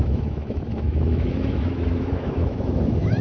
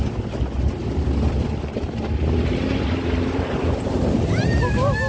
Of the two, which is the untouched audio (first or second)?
second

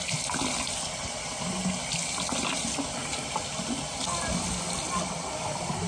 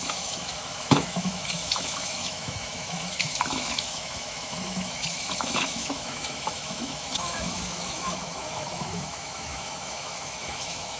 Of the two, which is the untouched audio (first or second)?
first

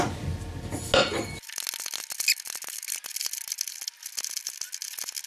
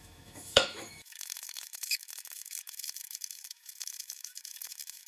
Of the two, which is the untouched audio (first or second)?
first